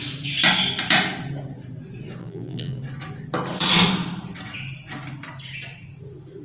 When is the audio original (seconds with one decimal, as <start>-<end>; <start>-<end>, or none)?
0.0-2.2; 2.8-6.4